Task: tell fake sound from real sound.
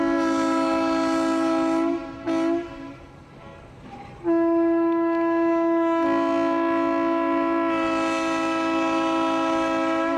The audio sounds real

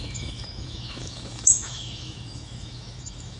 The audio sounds fake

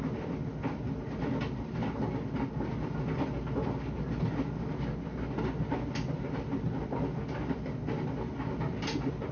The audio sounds real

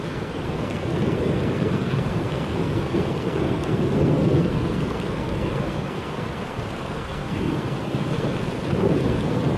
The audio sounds fake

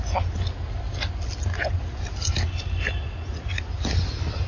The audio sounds real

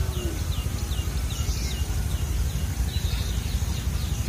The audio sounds real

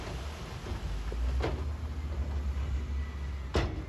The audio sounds real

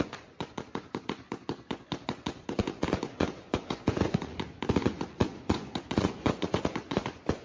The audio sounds fake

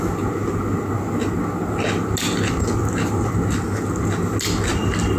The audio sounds real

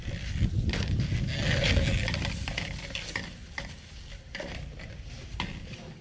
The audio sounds real